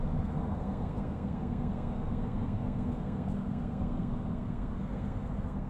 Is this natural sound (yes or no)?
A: no